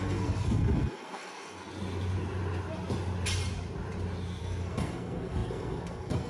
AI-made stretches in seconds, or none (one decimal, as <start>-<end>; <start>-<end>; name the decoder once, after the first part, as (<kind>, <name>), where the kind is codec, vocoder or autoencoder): 0.0-1.7 (codec, SNAC); 4.4-6.3

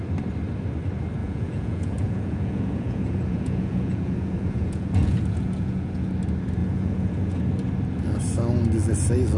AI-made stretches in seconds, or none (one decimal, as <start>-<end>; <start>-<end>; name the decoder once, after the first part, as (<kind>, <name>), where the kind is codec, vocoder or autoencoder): 1.2-6.1 (vocoder, Vocos); 6.6-7.4

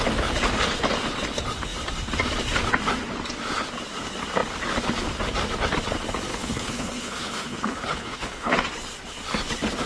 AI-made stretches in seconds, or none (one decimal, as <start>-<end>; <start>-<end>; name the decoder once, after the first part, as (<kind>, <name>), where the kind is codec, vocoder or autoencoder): 6.3-8.5 (codec, HILCodec)

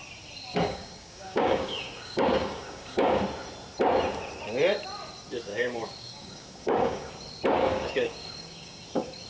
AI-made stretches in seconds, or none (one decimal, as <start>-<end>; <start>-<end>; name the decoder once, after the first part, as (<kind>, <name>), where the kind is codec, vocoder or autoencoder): 0.5-3.2 (codec, DAC); 5.5-7.1; 7.6-8.8

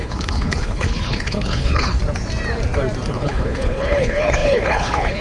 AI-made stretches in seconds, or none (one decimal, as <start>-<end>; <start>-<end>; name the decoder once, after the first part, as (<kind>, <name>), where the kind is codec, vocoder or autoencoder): 0.0-2.0 (codec, HILCodec); 3.1-5.2